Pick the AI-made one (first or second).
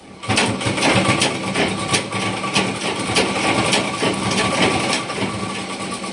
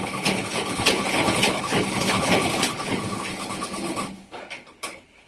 second